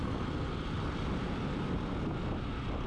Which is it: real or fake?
real